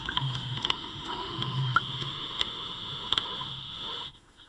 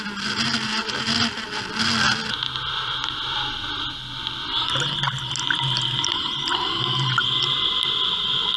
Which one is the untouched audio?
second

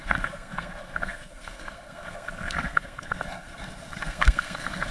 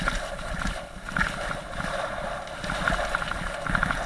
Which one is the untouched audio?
second